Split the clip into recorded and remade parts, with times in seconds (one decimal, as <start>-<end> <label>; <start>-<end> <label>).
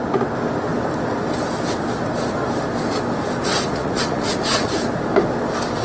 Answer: 0.0-3.5 recorded; 3.5-4.8 remade; 4.8-5.8 recorded